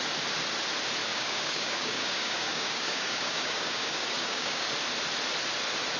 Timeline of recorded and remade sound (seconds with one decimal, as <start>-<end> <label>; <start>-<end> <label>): 0.0-1.1 recorded; 1.1-4.7 remade; 4.7-6.0 recorded